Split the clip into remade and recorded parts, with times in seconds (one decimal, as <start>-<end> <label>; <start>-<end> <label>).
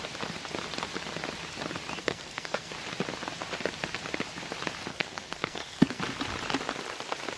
0.0-2.0 recorded; 2.0-2.7 remade; 2.7-4.9 recorded; 4.9-6.0 remade; 6.0-7.4 recorded